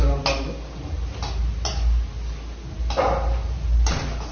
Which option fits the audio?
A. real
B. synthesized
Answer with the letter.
A